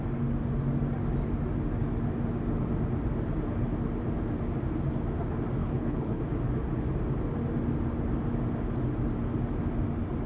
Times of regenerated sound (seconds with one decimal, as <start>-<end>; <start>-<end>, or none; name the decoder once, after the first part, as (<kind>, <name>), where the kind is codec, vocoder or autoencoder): 5.6-6.2 (codec, HILCodec)